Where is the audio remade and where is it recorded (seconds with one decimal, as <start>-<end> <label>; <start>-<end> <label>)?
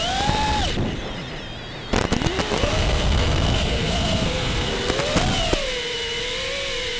0.0-2.7 recorded; 2.7-4.7 remade; 4.7-7.0 recorded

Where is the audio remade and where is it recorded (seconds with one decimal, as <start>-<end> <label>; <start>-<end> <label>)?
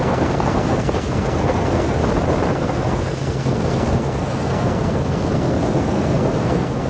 0.0-2.0 remade; 2.0-2.5 recorded; 2.5-6.9 remade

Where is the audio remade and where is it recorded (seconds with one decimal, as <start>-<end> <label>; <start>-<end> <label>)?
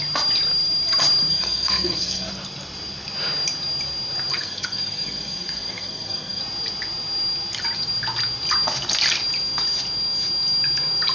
0.0-1.3 recorded; 1.3-2.3 remade; 2.3-4.3 recorded; 4.3-6.4 remade; 6.4-11.1 recorded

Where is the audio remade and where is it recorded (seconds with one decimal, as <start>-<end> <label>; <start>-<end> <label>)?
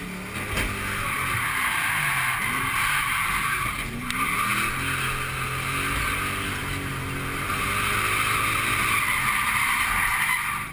0.0-10.7 recorded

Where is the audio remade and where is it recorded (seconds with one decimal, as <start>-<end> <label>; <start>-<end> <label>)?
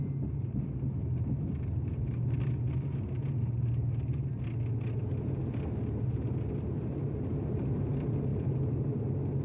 0.0-9.4 recorded